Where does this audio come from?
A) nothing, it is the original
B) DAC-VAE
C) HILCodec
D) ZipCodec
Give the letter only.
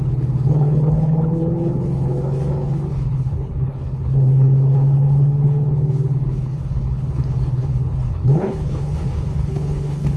C